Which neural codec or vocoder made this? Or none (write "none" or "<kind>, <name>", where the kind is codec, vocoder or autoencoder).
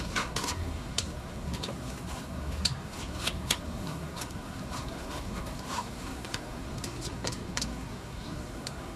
codec, SNAC